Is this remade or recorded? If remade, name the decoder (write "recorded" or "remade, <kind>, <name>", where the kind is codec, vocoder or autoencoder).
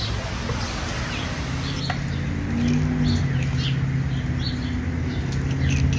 recorded